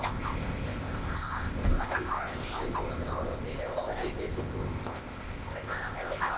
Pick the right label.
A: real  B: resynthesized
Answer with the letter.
B